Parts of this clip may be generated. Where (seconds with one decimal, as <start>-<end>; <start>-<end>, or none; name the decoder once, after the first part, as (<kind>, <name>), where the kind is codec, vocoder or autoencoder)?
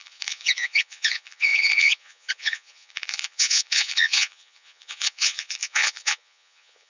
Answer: 0.0-6.9 (vocoder, Vocos)